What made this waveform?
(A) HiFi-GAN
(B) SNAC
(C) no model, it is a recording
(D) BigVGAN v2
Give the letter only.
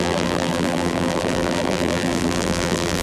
D